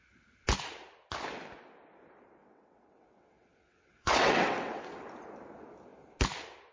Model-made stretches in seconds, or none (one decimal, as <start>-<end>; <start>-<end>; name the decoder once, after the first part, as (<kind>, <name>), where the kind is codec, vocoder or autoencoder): 2.4-4.9 (vocoder, WaveNeXt)